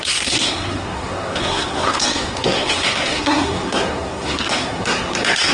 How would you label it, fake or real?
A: fake